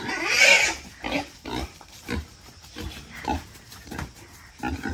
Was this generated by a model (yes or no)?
yes